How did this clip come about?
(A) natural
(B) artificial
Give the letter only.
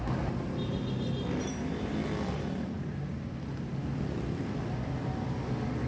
A